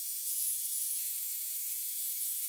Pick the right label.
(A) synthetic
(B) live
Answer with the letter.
A